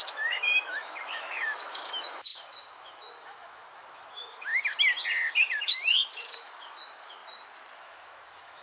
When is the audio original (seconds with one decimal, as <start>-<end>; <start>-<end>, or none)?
4.5-5.6; 7.2-7.8